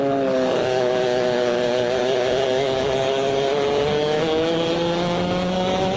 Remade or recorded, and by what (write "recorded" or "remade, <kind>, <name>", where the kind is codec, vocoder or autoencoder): remade, codec, DAC